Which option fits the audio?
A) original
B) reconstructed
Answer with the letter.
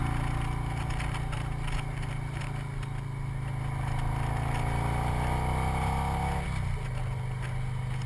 A